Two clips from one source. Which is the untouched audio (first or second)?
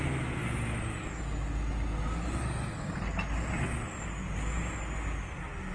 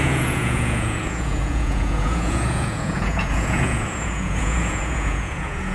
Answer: first